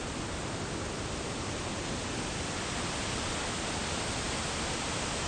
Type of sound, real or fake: real